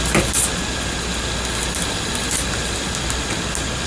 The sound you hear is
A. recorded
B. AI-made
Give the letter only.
A